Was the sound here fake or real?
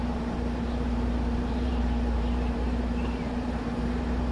fake